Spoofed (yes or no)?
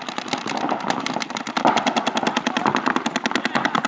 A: no